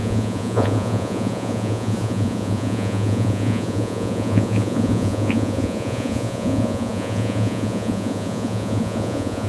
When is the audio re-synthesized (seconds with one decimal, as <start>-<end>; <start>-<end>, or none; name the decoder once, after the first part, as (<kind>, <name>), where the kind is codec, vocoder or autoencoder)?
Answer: 0.0-9.5 (vocoder, Vocos)